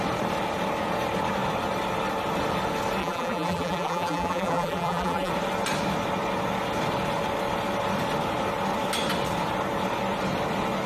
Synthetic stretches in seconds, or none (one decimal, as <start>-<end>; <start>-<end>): 3.0-5.3